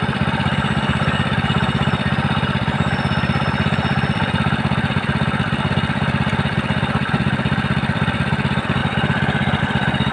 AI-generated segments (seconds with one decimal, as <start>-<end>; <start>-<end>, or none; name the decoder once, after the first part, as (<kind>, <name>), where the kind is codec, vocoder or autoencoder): none